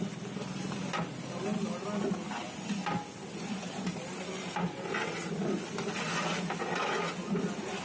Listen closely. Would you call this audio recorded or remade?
recorded